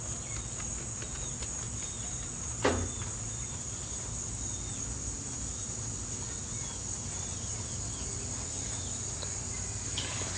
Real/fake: real